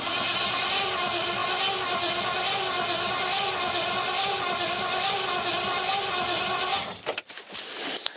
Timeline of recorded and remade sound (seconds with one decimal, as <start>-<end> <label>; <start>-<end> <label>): 0.0-1.4 remade; 1.4-5.9 recorded; 5.9-8.2 remade